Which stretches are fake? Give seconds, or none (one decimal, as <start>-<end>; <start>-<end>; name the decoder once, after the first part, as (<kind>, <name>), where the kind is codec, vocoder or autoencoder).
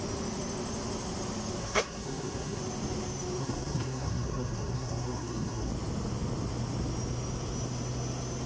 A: 1.6-2.6 (codec, SNAC); 3.4-5.7